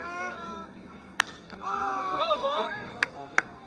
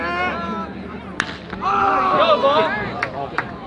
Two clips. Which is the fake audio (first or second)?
first